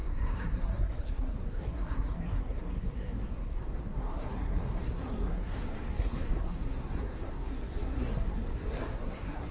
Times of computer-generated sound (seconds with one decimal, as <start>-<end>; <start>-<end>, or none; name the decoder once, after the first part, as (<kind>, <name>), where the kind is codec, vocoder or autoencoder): 0.0-9.5 (codec, SNAC)